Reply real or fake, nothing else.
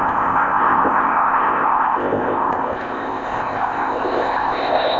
fake